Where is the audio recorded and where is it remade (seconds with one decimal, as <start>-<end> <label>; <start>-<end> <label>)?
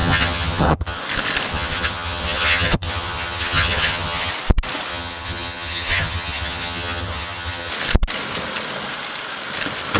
0.0-1.0 remade; 1.0-1.5 recorded; 1.5-4.3 remade; 4.3-4.9 recorded; 4.9-7.7 remade; 7.7-10.0 recorded